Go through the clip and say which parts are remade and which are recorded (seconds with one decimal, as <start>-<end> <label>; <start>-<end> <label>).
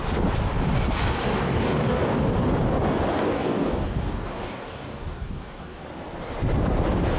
0.0-1.4 recorded; 1.4-2.2 remade; 2.2-3.1 recorded; 3.1-5.8 remade; 5.8-7.2 recorded